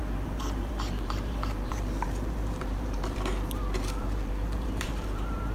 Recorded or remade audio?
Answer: remade